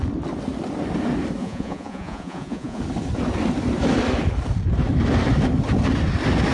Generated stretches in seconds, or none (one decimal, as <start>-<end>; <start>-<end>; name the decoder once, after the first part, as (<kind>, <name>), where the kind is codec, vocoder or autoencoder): 1.4-2.8 (vocoder, Vocos)